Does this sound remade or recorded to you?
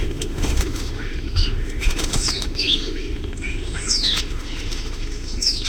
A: remade